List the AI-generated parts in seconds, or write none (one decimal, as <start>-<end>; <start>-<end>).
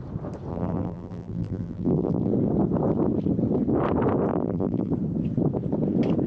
0.5-2.3; 4.3-4.9